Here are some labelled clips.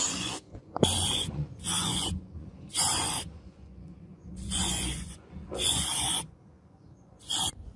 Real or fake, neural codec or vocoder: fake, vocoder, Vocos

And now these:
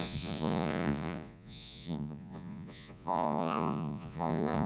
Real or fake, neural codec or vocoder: fake, vocoder, Vocos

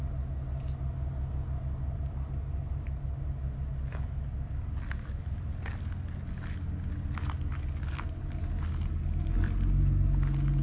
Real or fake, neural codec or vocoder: real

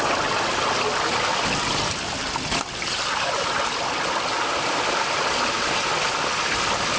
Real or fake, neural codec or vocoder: real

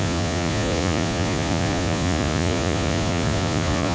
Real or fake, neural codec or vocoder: fake, vocoder, Vocos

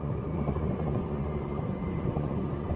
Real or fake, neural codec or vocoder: fake, vocoder, Vocos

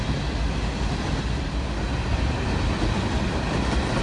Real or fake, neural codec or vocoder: real